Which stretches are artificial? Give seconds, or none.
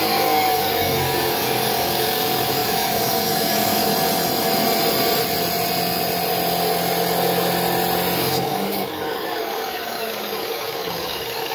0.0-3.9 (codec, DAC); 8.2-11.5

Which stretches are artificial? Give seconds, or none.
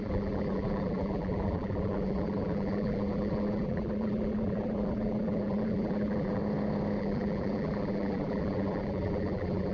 0.0-6.4 (vocoder, BigVGAN v2); 7.0-9.7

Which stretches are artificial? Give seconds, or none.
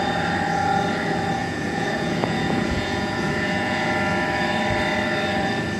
1.4-3.9 (vocoder, Vocos)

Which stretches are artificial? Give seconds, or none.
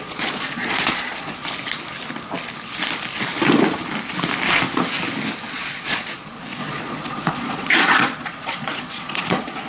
0.0-1.4 (vocoder, Vocos); 5.5-9.7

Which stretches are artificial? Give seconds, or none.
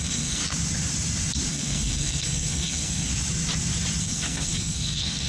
0.0-0.4 (codec, SNAC); 1.5-3.1; 4.0-5.3